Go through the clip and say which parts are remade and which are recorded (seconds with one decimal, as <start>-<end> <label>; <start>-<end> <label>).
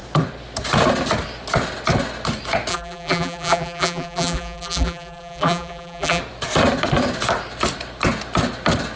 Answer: 0.0-2.7 recorded; 2.7-6.2 remade; 6.2-9.0 recorded